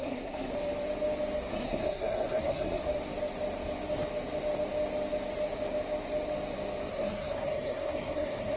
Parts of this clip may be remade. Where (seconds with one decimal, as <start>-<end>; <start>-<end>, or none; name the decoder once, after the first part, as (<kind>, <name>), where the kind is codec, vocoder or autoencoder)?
0.0-0.5 (codec, SNAC); 1.5-2.8; 6.9-8.6